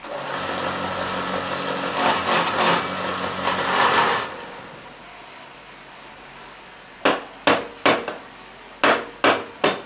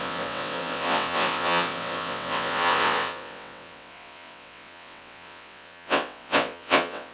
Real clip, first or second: first